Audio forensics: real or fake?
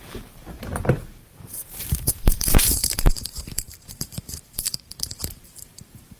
fake